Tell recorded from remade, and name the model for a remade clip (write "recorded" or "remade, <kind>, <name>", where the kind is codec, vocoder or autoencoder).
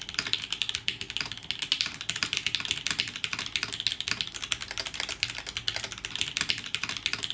recorded